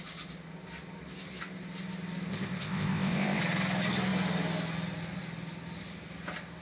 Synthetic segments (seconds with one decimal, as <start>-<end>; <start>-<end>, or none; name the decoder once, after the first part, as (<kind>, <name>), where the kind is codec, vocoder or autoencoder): 2.3-3.4 (codec, ZipCodec)